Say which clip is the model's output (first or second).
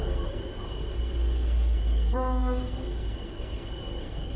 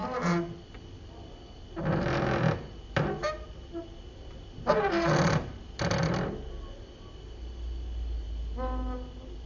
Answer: first